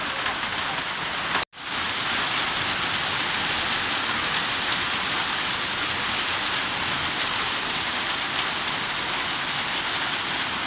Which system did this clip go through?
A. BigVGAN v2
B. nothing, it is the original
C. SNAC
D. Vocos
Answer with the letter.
B